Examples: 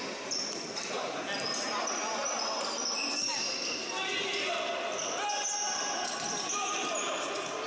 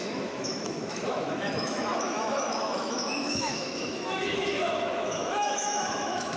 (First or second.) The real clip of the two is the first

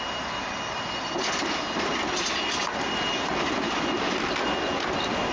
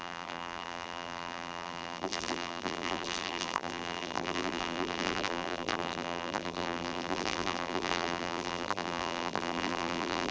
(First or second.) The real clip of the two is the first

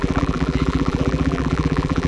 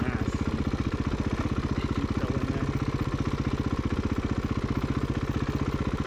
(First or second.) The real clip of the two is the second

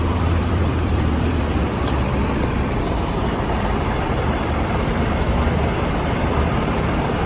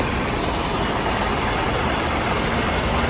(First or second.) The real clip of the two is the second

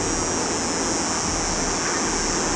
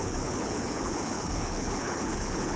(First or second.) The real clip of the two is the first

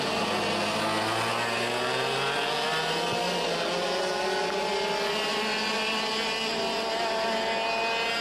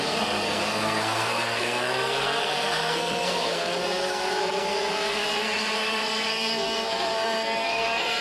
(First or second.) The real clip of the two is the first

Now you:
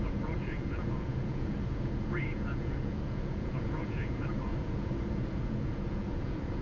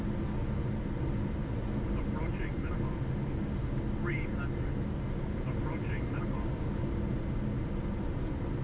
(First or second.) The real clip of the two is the second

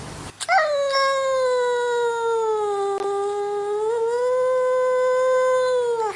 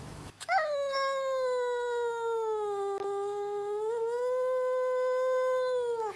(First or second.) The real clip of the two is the first